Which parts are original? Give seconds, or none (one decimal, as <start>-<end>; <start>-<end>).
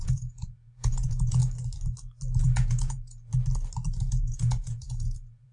1.4-2.4; 3.3-4.0